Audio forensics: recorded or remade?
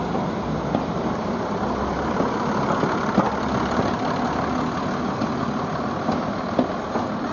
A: recorded